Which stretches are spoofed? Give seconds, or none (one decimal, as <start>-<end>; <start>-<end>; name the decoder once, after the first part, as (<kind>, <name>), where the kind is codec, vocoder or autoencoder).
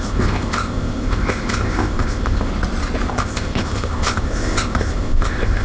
0.0-2.5 (codec, ZipCodec); 3.1-5.6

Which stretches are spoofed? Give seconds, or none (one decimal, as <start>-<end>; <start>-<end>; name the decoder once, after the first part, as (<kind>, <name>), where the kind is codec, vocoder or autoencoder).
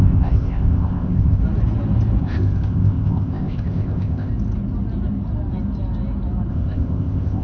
0.0-1.4 (codec, ZipCodec); 2.2-4.3; 6.5-7.4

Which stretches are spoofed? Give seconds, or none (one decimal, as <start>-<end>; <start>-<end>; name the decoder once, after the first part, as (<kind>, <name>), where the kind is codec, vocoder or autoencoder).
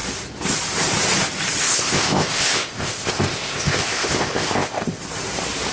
1.6-5.0 (codec, ZipCodec)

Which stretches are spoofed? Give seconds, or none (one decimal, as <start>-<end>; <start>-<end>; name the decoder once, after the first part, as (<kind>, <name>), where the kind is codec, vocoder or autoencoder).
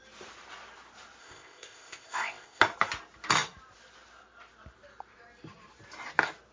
1.2-2.6 (codec, ZipCodec)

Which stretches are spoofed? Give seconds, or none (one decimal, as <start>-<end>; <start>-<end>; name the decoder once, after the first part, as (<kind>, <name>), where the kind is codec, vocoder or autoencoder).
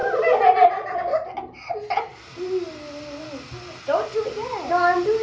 none